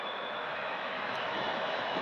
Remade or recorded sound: remade